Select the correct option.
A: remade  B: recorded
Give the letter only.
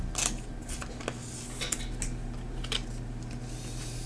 B